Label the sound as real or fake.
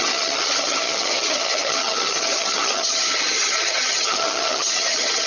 fake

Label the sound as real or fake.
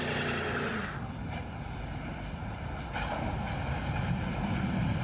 real